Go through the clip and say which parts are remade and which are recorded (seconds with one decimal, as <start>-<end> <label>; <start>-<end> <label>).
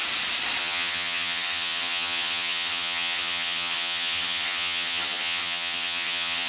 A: 0.0-0.6 recorded; 0.6-6.5 remade